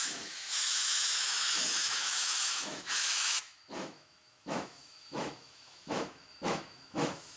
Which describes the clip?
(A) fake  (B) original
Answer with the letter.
A